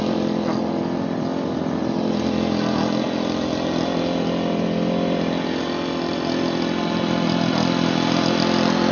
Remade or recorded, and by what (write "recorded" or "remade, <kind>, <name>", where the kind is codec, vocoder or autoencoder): recorded